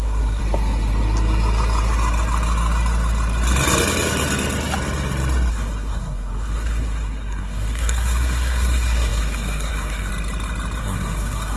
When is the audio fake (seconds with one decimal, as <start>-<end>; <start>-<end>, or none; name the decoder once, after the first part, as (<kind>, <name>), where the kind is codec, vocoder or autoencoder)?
0.0-0.4 (codec, SNAC); 5.5-10.1; 10.8-11.6

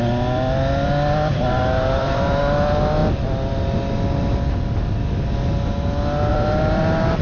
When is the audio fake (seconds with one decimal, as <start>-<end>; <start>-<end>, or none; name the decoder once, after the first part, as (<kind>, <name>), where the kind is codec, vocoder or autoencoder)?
1.3-2.4 (vocoder, BigVGAN v2); 6.3-7.2

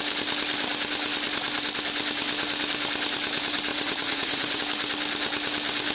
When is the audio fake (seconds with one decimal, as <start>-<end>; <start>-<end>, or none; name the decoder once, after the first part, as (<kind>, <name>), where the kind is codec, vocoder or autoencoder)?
3.7-4.6 (vocoder, Vocos)

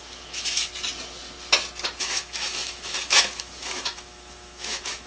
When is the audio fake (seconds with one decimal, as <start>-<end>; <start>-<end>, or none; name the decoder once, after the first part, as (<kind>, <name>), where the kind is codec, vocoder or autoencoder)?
0.0-0.7 (autoencoder, DAC-VAE); 2.0-5.1

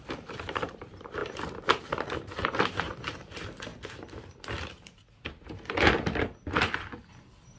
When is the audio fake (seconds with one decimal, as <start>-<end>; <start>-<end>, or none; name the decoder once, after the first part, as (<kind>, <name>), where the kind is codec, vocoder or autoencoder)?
0.0-1.2 (vocoder, BigVGAN v2); 1.8-3.7

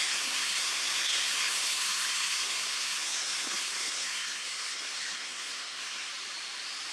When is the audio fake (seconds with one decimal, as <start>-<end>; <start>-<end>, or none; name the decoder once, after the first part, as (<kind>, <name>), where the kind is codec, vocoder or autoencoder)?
0.0-6.1 (codec, SNAC)

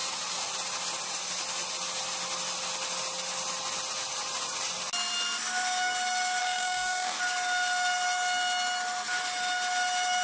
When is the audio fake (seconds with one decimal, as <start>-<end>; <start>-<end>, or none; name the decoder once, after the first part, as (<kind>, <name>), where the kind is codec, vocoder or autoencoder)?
6.4-7.2 (codec, DAC)